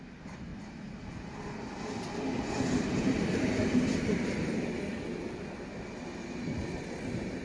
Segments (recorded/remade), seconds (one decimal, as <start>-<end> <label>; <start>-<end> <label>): 0.0-2.3 recorded; 2.3-4.6 remade; 4.6-7.4 recorded